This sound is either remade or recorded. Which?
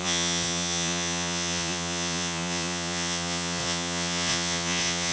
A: remade